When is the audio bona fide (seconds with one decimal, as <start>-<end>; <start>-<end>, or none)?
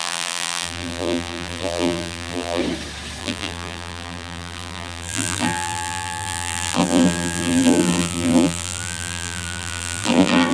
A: 2.6-3.2